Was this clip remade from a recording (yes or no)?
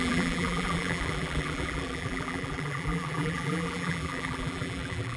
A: yes